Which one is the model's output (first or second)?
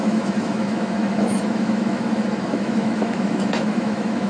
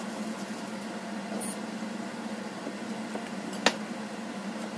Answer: first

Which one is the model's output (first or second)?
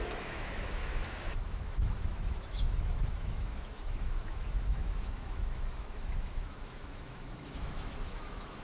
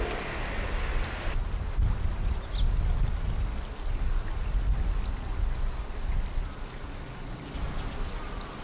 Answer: first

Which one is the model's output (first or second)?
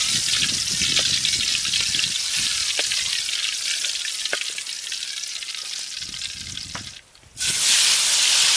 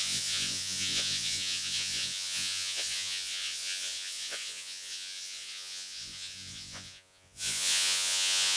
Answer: second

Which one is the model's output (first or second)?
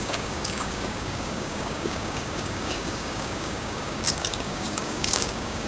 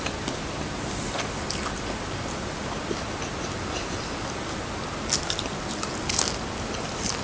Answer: first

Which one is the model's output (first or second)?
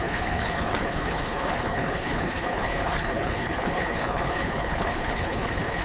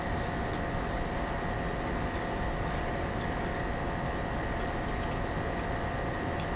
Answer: first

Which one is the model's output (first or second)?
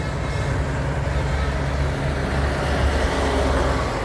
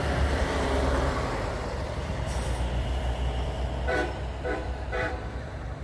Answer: second